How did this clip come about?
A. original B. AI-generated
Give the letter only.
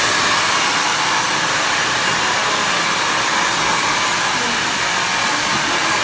A